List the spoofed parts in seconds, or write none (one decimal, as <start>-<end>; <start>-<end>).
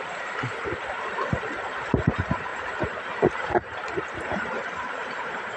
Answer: 0.0-5.6